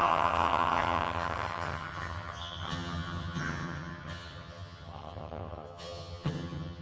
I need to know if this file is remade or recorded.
remade